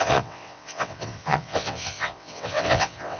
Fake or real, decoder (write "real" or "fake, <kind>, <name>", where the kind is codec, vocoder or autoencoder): fake, vocoder, WaveNeXt